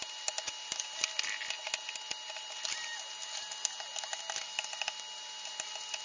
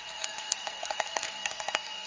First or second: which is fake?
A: second